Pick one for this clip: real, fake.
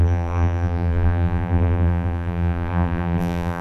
fake